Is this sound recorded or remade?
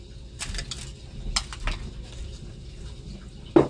recorded